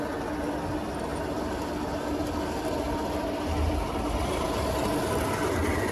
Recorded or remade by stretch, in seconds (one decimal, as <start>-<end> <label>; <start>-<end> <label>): 0.0-5.9 recorded